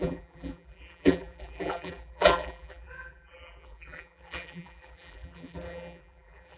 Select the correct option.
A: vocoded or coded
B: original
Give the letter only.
A